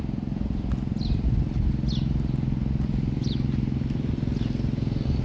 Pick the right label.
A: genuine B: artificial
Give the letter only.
A